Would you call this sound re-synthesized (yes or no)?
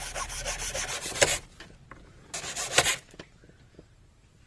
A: no